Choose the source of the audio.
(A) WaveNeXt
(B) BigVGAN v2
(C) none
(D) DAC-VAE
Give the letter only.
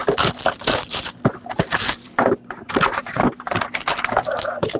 B